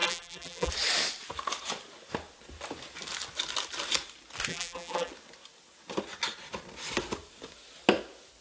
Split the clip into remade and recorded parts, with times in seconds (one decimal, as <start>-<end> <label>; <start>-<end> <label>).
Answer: 0.0-0.7 remade; 0.7-4.5 recorded; 4.5-5.1 remade; 5.1-8.4 recorded